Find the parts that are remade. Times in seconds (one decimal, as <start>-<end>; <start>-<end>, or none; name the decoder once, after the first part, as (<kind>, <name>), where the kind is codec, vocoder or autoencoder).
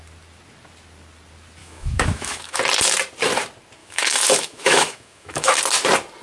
1.6-2.6 (autoencoder, DAC-VAE); 3.8-5.6